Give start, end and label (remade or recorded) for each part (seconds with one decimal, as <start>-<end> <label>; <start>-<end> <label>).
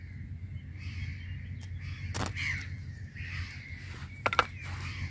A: 0.0-5.1 recorded